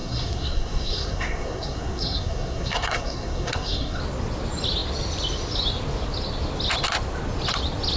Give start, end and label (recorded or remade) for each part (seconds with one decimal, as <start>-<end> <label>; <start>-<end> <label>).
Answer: 0.0-4.0 remade; 4.0-8.0 recorded